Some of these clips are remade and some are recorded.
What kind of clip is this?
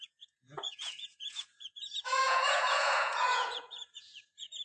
remade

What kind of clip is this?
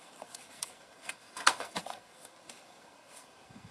remade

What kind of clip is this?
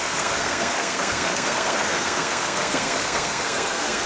remade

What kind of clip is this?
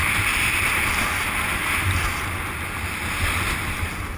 recorded